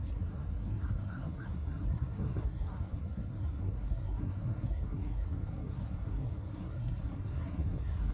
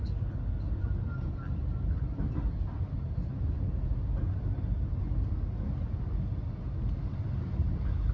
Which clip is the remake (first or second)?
first